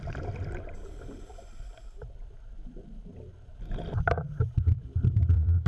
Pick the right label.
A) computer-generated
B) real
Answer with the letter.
A